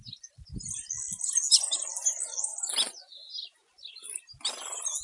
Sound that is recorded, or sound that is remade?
recorded